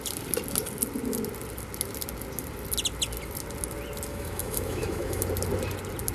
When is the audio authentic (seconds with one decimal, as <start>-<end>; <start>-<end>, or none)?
0.0-4.1; 5.2-6.1